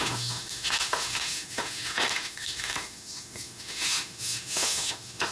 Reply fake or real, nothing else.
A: fake